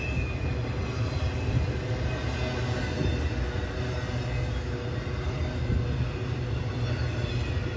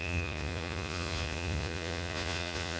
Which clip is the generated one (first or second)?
second